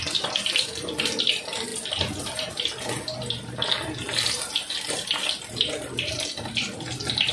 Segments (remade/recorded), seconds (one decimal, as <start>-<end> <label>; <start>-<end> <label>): 0.0-7.3 recorded